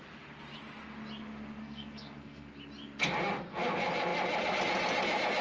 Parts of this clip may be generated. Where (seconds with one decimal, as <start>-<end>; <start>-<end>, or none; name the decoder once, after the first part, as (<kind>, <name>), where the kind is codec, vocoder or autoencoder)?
1.6-2.5 (codec, SNAC)